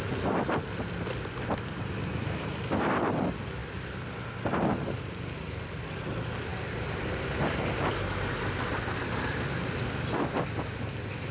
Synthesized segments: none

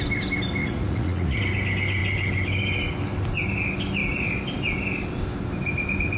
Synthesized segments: 0.6-1.4 (vocoder, Vocos)

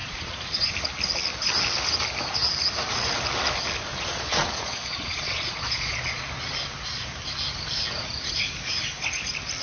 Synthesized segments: 0.0-0.7 (vocoder, Vocos); 3.9-6.2